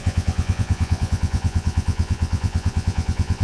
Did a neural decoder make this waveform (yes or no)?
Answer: yes